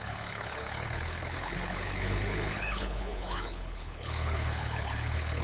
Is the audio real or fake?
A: fake